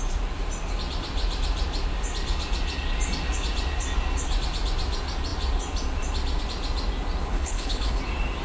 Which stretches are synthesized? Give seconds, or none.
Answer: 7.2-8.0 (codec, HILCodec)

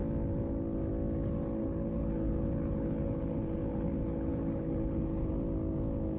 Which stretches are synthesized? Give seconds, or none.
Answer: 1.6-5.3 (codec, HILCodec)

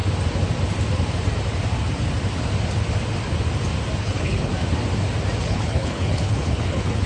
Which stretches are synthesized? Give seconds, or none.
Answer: 4.0-4.5 (codec, HILCodec); 5.4-7.1

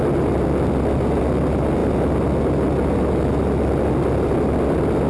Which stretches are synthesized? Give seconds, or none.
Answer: none

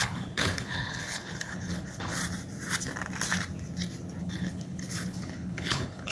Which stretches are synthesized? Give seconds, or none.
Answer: 0.0-2.2 (codec, HILCodec); 4.2-6.1

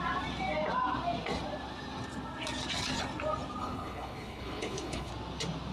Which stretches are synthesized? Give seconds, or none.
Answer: 3.6-5.1 (codec, HILCodec)

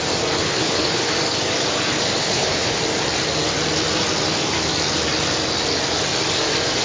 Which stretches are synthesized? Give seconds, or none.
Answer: 0.4-1.1 (codec, HILCodec); 2.2-2.8